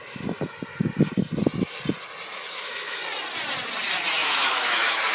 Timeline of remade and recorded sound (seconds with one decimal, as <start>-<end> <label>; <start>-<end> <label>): 0.0-2.3 recorded; 2.3-3.0 remade; 3.0-4.2 recorded; 4.2-5.1 remade